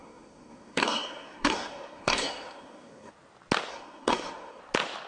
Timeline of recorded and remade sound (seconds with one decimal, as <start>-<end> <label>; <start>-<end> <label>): 0.0-3.1 remade; 3.1-3.7 recorded; 3.7-4.6 remade; 4.6-5.1 recorded